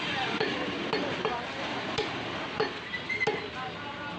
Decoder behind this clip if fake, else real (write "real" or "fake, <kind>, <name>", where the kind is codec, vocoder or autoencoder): real